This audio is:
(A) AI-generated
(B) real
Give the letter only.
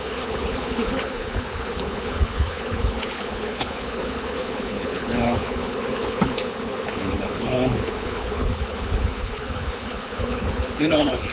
A